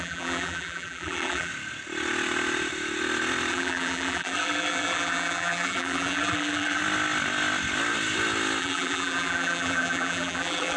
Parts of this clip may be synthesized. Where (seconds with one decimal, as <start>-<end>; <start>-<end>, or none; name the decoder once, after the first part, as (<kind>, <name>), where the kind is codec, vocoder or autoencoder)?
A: 0.0-1.5 (vocoder, BigVGAN v2); 3.5-6.8; 8.6-10.8